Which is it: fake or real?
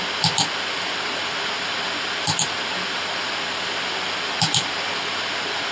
real